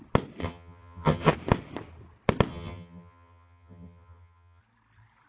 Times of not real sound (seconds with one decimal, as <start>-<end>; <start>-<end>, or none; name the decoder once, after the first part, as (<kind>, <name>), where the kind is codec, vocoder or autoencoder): 0.4-1.3 (vocoder, HiFi-GAN); 2.5-4.6